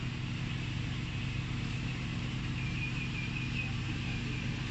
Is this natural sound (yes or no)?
yes